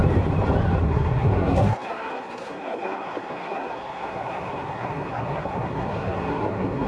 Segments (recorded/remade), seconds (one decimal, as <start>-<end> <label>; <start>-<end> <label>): 0.0-0.8 recorded; 0.8-6.9 remade